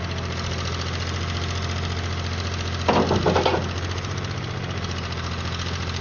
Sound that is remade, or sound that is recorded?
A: recorded